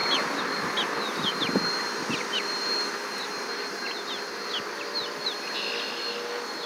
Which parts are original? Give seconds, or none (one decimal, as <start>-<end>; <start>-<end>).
3.3-6.7